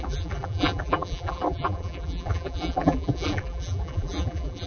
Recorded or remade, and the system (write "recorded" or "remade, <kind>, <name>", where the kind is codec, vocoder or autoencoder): remade, vocoder, BigVGAN v2